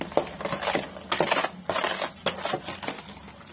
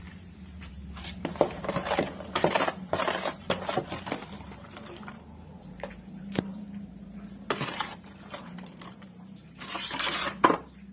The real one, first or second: first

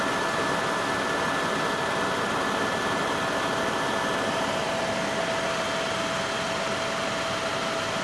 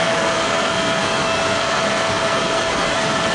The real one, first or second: first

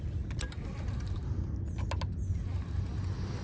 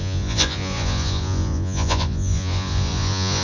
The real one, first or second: first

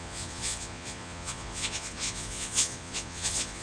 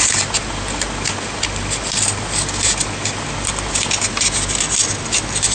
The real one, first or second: second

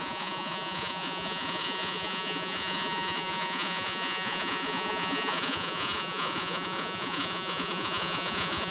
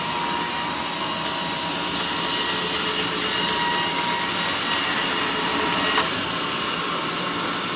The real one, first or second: second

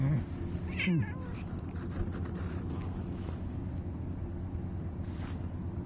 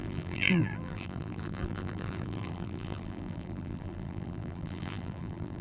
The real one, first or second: first